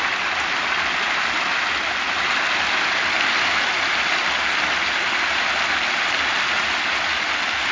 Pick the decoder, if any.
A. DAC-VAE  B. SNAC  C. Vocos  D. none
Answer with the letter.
D